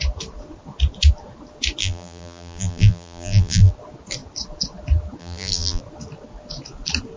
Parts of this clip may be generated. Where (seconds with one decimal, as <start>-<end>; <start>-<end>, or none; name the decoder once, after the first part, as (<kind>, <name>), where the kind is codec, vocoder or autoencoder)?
1.8-3.7 (vocoder, BigVGAN v2); 5.2-5.8